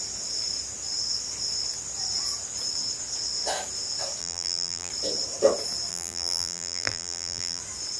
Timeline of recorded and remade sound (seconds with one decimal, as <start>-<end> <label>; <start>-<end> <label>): 0.0-4.2 recorded; 4.2-4.9 remade; 4.9-5.9 recorded; 5.9-7.6 remade; 7.6-8.0 recorded